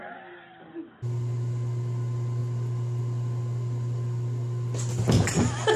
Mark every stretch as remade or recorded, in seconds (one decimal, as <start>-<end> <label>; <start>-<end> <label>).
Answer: 0.0-5.8 recorded